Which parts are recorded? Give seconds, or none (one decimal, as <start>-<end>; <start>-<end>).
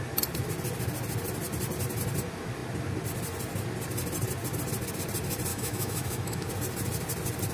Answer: 0.0-5.5; 6.5-7.5